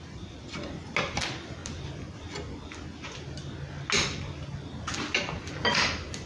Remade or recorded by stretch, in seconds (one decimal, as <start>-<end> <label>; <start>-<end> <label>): 0.0-6.3 recorded